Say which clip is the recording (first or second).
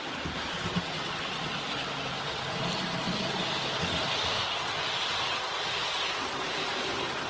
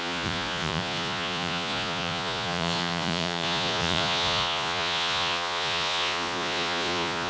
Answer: first